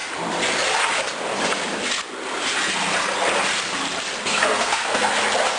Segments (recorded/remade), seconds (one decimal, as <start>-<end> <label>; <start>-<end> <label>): 0.0-4.3 recorded; 4.3-5.1 remade; 5.1-5.6 recorded